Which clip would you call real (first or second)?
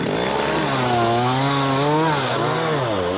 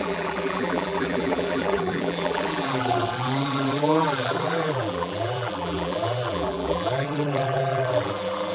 first